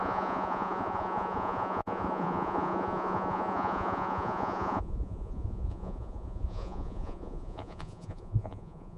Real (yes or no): no